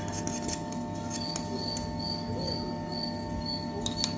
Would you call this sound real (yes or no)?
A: yes